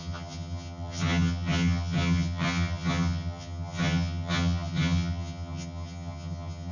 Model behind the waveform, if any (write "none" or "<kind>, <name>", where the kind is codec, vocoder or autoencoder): vocoder, HiFi-GAN